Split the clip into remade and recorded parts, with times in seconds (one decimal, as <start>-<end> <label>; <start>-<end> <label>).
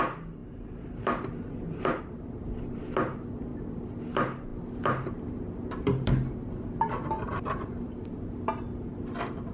0.0-4.5 recorded; 4.5-8.2 remade; 8.2-9.5 recorded